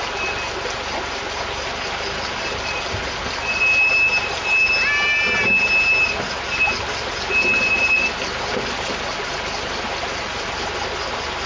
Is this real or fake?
real